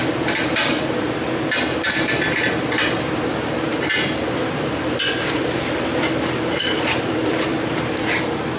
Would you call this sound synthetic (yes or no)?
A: yes